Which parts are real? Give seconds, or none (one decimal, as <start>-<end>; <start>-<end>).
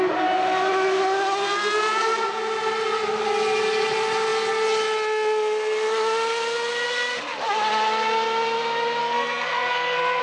0.0-9.0